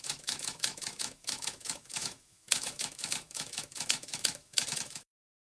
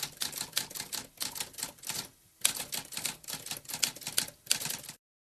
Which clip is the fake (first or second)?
first